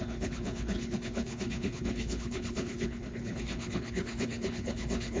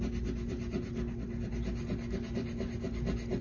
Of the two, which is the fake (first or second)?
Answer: first